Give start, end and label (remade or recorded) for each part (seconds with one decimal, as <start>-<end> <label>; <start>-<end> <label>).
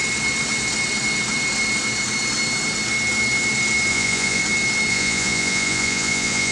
0.0-3.9 recorded; 3.9-4.4 remade; 4.4-4.9 recorded; 4.9-6.5 remade